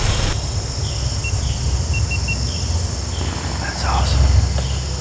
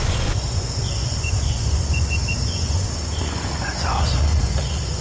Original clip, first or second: first